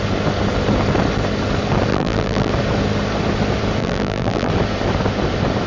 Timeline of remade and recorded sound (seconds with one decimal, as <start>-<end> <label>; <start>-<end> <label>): 0.0-1.9 recorded; 1.9-2.5 remade; 2.5-3.8 recorded; 3.8-4.5 remade; 4.5-5.7 recorded

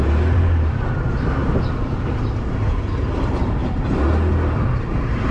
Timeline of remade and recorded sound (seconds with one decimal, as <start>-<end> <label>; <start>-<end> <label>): 0.0-5.3 recorded

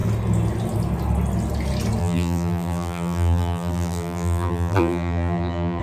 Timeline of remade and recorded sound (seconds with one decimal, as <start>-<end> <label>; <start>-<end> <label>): 0.0-2.0 recorded; 2.0-5.8 remade

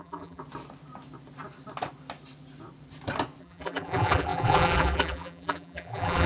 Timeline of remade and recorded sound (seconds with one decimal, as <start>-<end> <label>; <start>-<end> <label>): 0.0-0.4 remade; 0.4-3.4 recorded; 3.4-6.3 remade

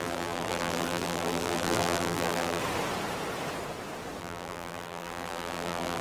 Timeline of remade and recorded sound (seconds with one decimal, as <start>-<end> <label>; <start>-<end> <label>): 0.0-2.6 remade; 2.6-4.2 recorded; 4.2-6.0 remade

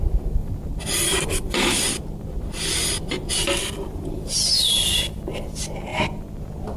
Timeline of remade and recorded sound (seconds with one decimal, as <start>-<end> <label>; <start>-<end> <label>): 0.0-0.4 recorded; 0.4-3.3 remade; 3.3-6.8 recorded